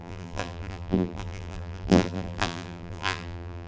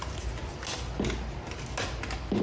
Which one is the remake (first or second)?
first